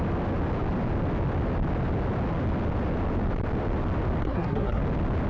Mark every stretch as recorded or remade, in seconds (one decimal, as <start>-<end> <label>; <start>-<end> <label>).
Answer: 0.0-4.2 recorded; 4.2-4.8 remade; 4.8-5.3 recorded